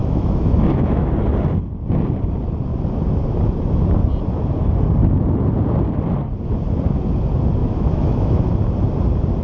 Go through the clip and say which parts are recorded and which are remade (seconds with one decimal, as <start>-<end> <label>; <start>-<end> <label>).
0.0-1.1 remade; 1.1-7.6 recorded; 7.6-8.4 remade; 8.4-9.4 recorded